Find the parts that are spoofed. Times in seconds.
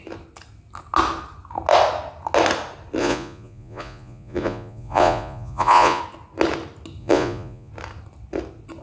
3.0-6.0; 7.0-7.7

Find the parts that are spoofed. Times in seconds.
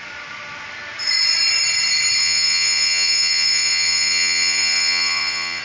2.2-5.6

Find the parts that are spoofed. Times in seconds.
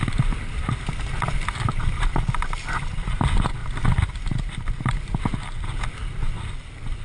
none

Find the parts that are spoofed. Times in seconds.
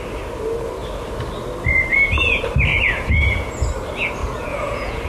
2.7-3.5; 4.2-5.1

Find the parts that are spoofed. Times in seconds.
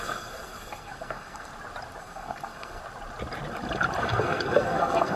0.0-1.5; 2.0-2.8; 4.0-5.2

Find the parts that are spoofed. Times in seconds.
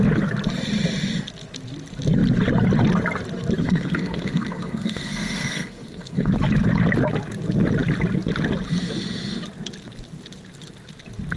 3.6-6.3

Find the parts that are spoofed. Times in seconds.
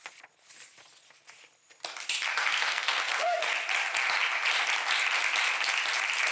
2.3-3.4